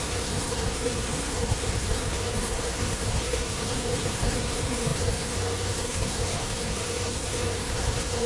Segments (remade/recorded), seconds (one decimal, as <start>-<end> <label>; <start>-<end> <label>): 0.0-8.3 remade